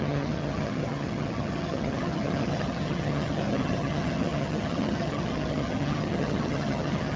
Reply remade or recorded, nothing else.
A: remade